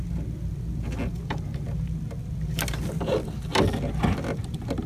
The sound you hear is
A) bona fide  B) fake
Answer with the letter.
A